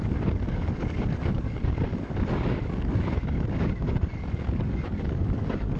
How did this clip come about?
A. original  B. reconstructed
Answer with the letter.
B